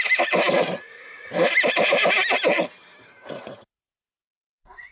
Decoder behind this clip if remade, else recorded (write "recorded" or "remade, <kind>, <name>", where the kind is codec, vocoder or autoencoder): remade, vocoder, BigVGAN v2